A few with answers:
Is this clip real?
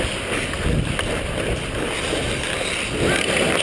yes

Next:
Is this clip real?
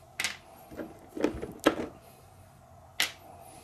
yes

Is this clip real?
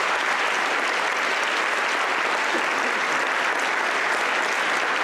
yes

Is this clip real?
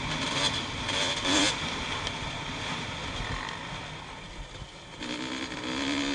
yes